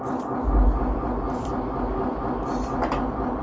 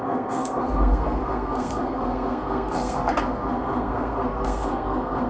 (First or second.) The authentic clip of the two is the first